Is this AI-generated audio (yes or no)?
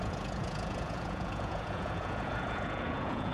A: yes